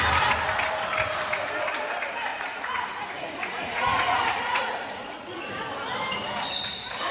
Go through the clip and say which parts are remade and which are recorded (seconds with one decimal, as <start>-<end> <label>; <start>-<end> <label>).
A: 0.0-2.3 recorded; 2.3-5.5 remade; 5.5-7.1 recorded